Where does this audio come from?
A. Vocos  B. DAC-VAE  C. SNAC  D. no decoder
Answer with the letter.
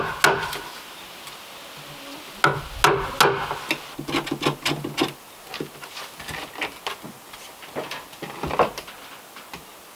D